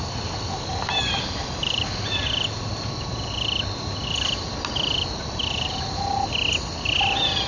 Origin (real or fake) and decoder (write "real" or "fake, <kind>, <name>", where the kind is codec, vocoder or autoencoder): real